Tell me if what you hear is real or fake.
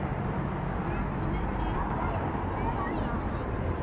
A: real